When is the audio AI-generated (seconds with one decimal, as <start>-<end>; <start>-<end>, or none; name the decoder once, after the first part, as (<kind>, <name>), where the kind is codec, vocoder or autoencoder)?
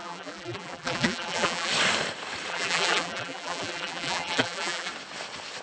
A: 0.0-1.7 (vocoder, BigVGAN v2); 2.5-4.9